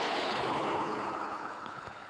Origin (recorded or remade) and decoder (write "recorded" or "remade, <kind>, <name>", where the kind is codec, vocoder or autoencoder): remade, codec, HILCodec